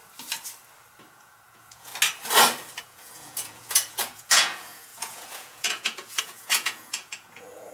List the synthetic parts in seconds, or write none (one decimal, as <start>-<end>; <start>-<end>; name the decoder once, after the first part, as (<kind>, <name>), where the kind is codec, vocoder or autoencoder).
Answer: 1.1-1.9 (vocoder, Vocos); 2.8-7.7